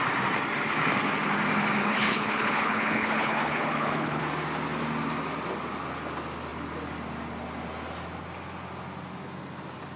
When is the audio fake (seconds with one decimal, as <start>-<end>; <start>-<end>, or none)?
1.8-4.2